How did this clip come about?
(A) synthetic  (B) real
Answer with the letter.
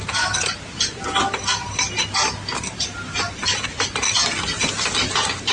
B